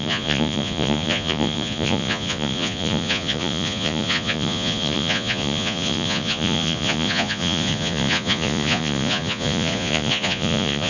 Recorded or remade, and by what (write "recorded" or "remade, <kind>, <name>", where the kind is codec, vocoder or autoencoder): remade, vocoder, Vocos